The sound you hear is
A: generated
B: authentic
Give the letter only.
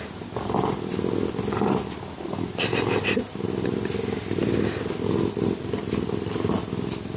B